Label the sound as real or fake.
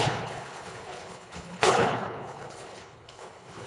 fake